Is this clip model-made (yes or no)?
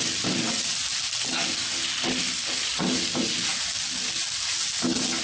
no